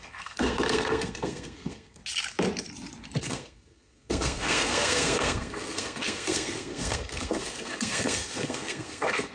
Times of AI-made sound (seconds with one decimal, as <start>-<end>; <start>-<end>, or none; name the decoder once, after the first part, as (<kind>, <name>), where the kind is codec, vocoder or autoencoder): 0.0-2.0 (codec, SNAC); 3.2-9.3